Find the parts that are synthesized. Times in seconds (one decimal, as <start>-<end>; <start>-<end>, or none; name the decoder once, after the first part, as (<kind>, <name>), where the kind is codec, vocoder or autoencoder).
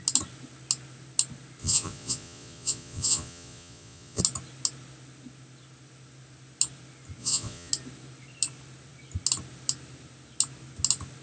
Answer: 1.6-4.2 (vocoder, Vocos); 7.2-7.7